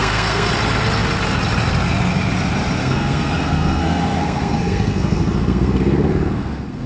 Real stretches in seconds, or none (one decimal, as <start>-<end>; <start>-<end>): 0.5-2.8